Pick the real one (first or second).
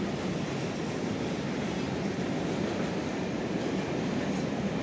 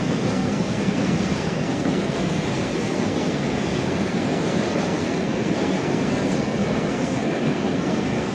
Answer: first